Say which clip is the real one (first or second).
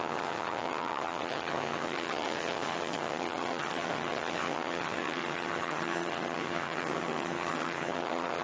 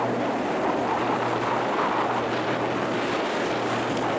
second